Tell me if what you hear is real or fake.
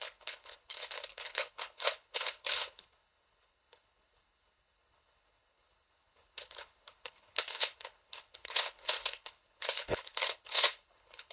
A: fake